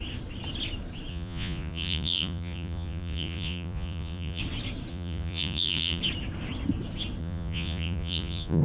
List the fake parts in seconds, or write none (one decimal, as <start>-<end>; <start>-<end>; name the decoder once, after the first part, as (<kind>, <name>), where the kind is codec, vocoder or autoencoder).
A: 1.1-4.4 (vocoder, Vocos); 4.9-6.0; 7.2-8.6